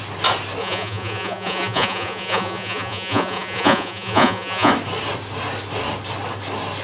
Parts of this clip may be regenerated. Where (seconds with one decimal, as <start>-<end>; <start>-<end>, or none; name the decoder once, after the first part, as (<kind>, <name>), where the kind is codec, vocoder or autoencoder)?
0.6-4.7 (vocoder, Vocos)